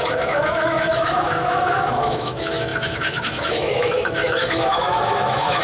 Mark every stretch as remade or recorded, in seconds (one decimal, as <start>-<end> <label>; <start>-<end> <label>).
0.0-5.6 remade